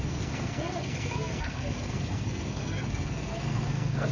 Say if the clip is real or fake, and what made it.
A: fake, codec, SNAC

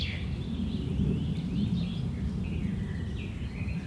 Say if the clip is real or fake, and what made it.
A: real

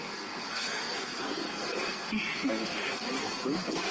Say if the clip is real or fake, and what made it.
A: fake, codec, SNAC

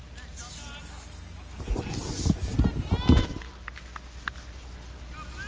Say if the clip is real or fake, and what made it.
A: real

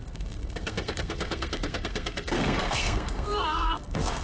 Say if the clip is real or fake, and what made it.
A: fake, codec, SNAC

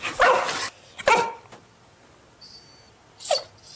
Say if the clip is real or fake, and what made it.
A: real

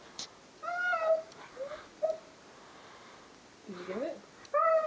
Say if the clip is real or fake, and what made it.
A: real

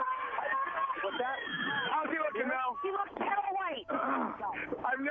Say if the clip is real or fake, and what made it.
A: real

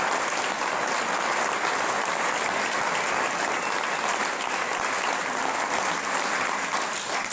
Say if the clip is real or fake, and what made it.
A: real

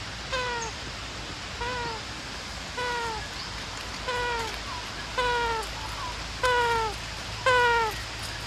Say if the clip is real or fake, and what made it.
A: real